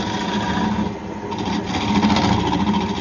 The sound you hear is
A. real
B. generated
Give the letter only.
A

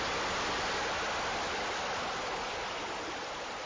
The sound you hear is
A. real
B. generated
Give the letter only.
A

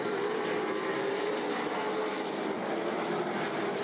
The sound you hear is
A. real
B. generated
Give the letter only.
A